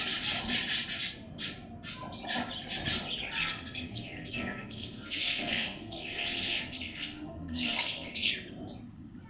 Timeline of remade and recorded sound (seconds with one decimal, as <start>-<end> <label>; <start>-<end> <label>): 0.0-3.4 recorded; 3.4-8.3 remade; 8.3-9.3 recorded